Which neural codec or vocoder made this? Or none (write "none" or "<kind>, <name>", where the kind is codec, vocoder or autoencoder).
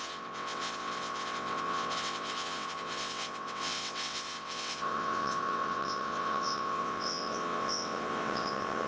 vocoder, WaveNeXt